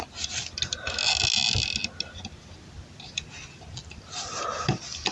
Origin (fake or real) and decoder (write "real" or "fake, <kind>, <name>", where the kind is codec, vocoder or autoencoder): real